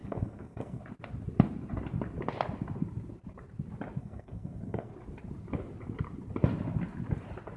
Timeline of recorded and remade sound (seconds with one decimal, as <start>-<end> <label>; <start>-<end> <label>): 0.0-0.8 remade; 0.8-4.0 recorded; 4.0-4.9 remade; 4.9-7.6 recorded